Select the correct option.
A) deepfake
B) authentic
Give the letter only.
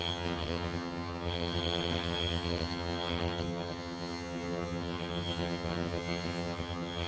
A